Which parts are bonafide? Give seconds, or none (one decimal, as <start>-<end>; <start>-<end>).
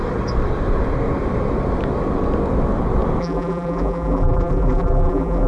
0.0-3.2